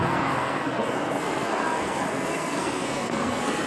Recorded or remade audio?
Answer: remade